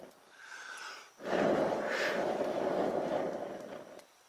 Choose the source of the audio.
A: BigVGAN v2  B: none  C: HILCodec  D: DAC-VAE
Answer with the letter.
B